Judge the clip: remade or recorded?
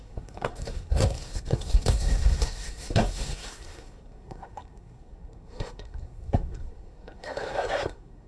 remade